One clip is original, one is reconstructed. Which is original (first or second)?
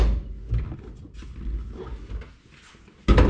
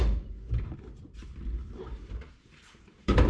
first